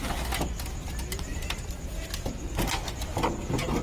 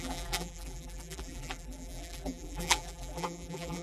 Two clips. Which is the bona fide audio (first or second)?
first